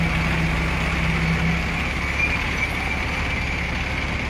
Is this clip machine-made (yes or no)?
no